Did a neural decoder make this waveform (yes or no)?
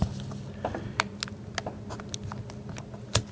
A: no